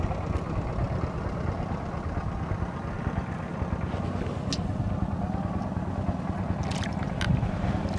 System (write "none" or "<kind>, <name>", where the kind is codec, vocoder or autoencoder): none